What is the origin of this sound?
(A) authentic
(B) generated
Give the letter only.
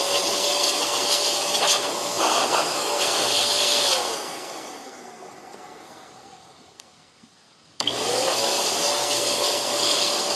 B